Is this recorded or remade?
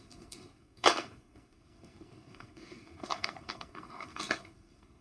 remade